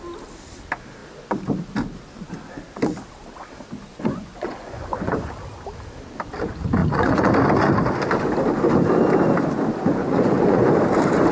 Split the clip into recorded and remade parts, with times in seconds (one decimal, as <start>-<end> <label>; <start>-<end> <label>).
0.0-3.9 recorded; 3.9-5.3 remade; 5.3-6.8 recorded; 6.8-7.3 remade; 7.3-10.0 recorded; 10.0-10.7 remade; 10.7-11.3 recorded